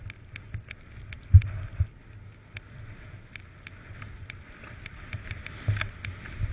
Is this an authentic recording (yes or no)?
yes